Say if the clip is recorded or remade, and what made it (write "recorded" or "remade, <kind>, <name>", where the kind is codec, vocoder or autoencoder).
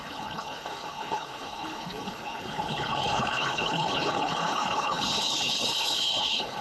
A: remade, codec, HILCodec